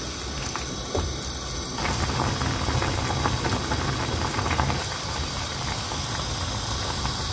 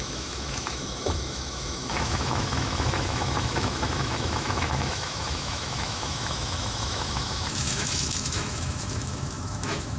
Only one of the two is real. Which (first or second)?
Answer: first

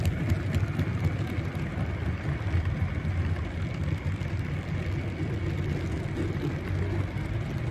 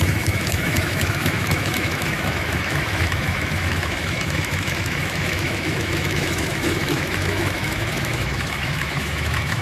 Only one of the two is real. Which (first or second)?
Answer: first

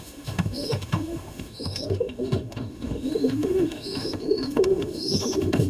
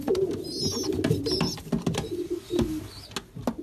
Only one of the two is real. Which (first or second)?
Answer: second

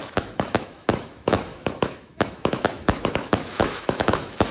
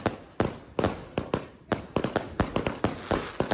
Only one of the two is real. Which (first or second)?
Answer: second